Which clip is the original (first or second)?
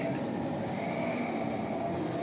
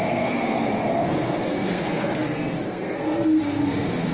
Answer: first